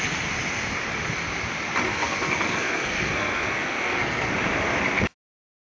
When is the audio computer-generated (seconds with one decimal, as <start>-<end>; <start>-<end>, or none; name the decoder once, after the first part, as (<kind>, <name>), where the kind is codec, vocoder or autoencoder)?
1.9-4.3 (codec, SNAC)